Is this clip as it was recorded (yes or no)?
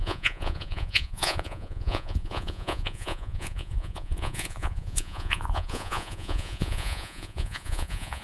no